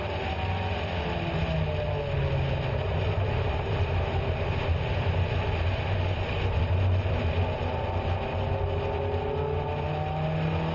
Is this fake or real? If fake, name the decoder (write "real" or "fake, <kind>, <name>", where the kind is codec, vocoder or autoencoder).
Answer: real